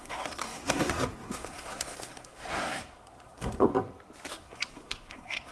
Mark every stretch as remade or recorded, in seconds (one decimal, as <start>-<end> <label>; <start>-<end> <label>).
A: 0.0-3.7 remade; 3.7-4.3 recorded; 4.3-5.5 remade